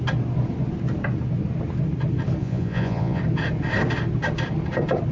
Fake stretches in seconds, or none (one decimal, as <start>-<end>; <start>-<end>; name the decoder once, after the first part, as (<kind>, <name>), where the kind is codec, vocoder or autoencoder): 2.4-3.2 (vocoder, Vocos)